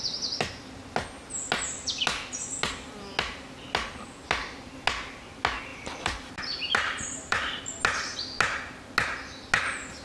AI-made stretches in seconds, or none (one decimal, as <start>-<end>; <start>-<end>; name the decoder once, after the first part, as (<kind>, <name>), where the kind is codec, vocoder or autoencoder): 5.7-7.6 (vocoder, BigVGAN v2)